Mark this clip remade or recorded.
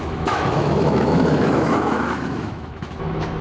remade